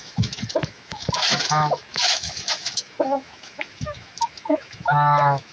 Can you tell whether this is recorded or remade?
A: remade